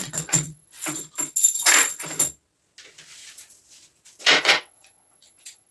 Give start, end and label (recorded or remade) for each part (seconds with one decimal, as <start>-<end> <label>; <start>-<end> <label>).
0.0-1.0 remade; 1.0-4.4 recorded; 4.4-5.7 remade